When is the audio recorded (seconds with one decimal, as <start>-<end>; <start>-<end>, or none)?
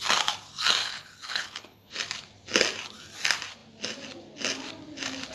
0.0-0.8; 1.9-5.3